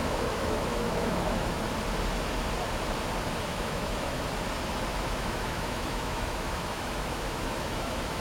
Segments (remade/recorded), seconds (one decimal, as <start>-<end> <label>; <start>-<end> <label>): 0.0-1.6 remade; 1.6-3.5 recorded; 3.5-4.2 remade; 4.2-4.9 recorded; 4.9-8.2 remade

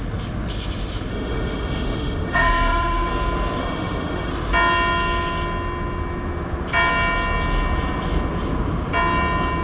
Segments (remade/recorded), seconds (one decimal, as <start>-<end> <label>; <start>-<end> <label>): 0.0-1.1 recorded; 1.1-3.1 remade; 3.1-3.6 recorded; 3.6-4.3 remade; 4.3-9.6 recorded